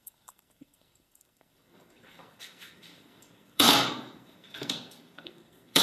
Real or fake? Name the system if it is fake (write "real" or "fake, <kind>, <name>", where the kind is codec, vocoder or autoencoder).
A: fake, codec, SNAC